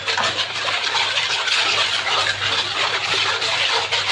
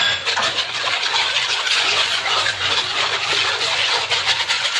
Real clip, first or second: first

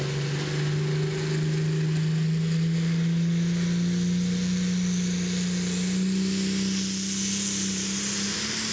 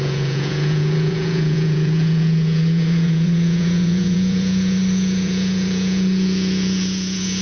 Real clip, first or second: first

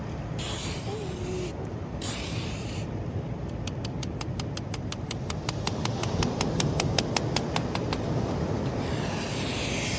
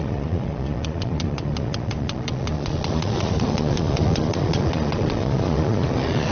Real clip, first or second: first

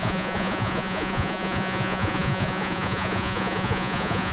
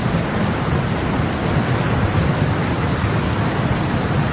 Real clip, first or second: second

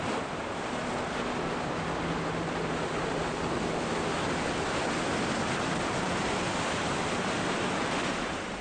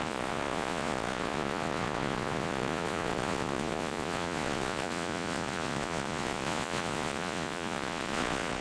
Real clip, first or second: first